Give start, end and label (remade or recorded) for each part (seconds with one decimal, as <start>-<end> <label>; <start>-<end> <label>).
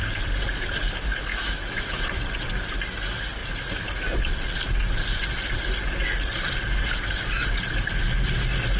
0.0-1.3 recorded; 1.3-2.0 remade; 2.0-8.8 recorded